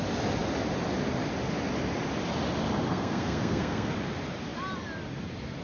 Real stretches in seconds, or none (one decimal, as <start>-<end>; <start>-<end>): 0.0-2.9; 3.9-5.6